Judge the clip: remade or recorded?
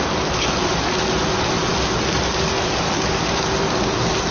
recorded